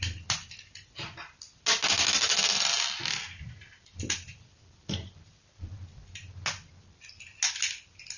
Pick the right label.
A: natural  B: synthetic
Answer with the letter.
A